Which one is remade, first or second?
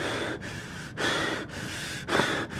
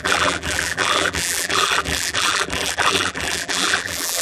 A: second